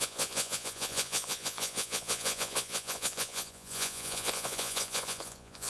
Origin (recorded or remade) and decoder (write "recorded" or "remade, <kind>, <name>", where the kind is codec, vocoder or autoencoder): remade, vocoder, Vocos